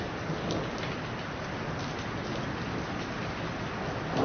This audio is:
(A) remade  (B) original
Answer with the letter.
B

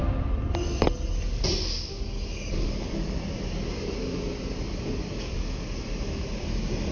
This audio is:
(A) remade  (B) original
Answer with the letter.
B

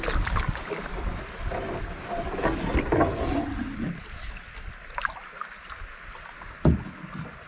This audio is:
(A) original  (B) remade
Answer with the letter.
A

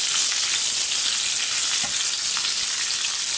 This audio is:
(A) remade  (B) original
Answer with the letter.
B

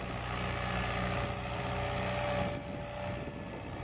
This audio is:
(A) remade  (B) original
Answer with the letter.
B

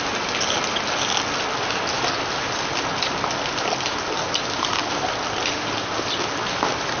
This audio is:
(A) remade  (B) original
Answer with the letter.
B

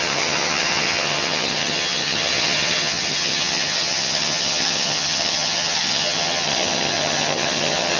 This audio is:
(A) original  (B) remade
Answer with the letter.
B